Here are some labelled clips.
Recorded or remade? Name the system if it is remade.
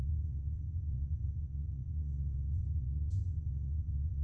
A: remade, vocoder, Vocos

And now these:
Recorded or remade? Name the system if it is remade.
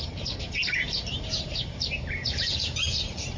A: remade, vocoder, BigVGAN v2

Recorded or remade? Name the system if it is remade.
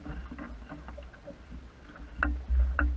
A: recorded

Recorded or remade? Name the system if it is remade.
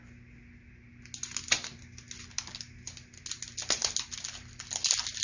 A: recorded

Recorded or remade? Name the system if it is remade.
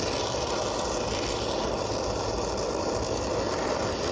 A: remade, vocoder, BigVGAN v2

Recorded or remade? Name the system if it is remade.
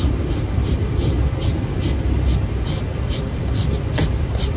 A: recorded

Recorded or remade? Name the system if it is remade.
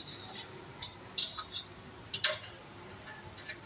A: recorded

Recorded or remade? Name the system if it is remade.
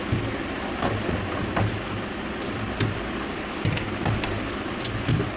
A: recorded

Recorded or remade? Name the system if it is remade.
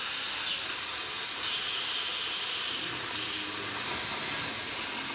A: recorded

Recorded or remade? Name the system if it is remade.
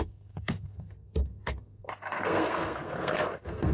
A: remade, codec, SNAC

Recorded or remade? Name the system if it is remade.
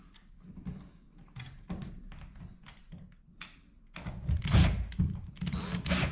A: recorded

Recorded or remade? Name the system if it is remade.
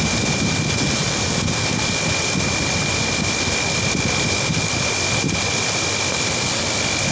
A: recorded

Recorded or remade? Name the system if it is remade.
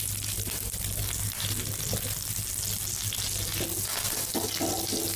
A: recorded